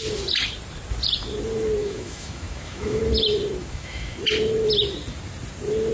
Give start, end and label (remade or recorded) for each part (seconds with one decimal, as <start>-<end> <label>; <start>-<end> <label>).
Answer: 0.0-1.8 recorded; 1.8-3.0 remade; 3.0-3.6 recorded; 3.6-4.2 remade; 4.2-5.9 recorded